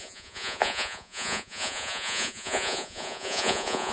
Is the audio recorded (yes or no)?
no